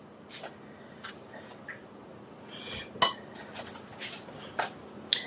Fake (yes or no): no